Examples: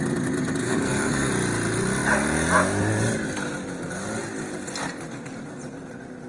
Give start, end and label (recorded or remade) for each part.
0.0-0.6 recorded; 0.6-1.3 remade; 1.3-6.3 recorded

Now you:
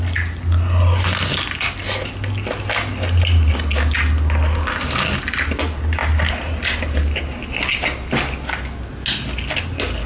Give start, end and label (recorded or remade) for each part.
0.0-10.1 recorded

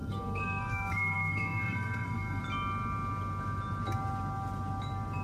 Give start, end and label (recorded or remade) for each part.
0.0-2.4 remade; 2.4-5.2 recorded

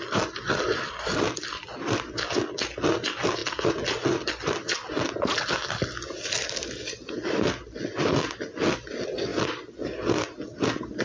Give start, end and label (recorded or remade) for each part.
0.0-11.0 recorded

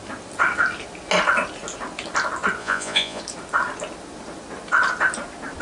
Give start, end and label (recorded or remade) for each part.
0.0-2.6 recorded; 2.6-3.2 remade; 3.2-5.6 recorded

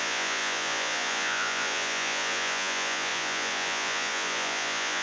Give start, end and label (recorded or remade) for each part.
0.0-5.0 remade

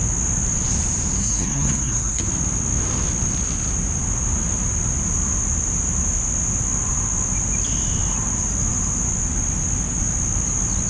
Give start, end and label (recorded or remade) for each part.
0.0-1.2 recorded; 1.2-2.3 remade; 2.3-10.9 recorded

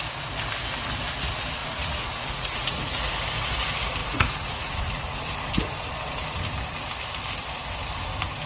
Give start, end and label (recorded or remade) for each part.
0.0-1.6 recorded; 1.6-3.1 remade; 3.1-4.0 recorded; 4.0-5.2 remade; 5.2-8.5 recorded